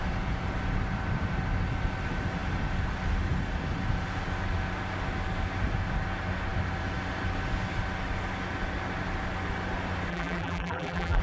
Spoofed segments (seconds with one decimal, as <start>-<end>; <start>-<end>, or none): 10.1-11.2